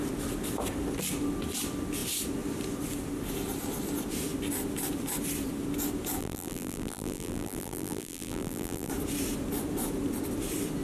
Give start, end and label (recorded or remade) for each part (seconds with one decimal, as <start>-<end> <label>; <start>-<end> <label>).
0.0-6.2 recorded; 6.2-8.9 remade; 8.9-10.8 recorded